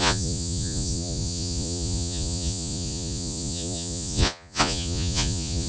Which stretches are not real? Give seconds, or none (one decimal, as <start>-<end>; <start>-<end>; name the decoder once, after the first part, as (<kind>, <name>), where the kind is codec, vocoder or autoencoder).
0.0-5.7 (vocoder, Vocos)